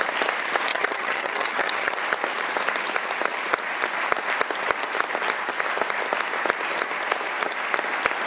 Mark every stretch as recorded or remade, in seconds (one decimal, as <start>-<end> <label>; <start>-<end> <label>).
0.0-0.7 recorded; 0.7-2.0 remade; 2.0-8.3 recorded